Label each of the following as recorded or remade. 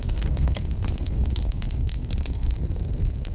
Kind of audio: remade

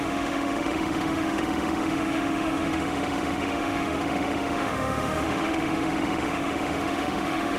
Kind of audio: remade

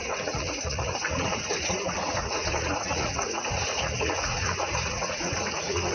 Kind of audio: remade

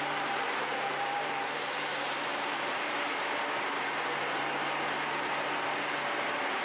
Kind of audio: remade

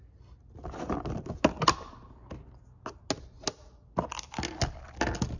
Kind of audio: recorded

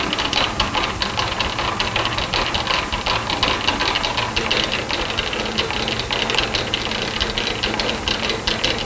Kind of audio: recorded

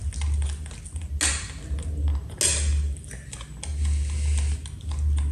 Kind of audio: recorded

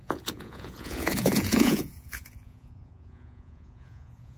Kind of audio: remade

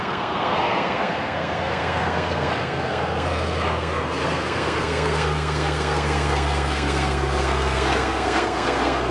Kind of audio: remade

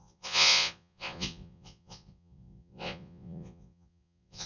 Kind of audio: remade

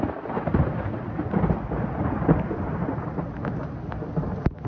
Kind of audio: recorded